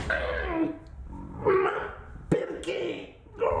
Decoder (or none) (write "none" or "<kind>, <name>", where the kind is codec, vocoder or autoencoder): none